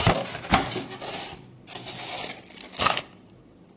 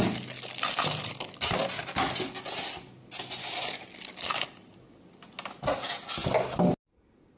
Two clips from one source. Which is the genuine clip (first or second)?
second